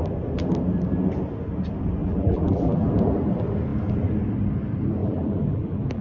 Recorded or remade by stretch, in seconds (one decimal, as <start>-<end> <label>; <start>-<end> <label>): 0.0-2.0 recorded; 2.0-2.9 remade; 2.9-5.0 recorded; 5.0-6.0 remade